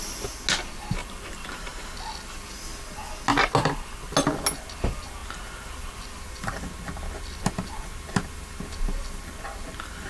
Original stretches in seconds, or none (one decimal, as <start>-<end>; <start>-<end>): 0.0-1.0; 1.8-10.1